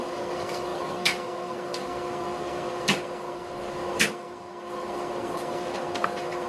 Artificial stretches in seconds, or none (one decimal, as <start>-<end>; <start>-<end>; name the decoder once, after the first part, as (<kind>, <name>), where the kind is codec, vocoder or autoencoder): 0.0-6.5 (codec, SNAC)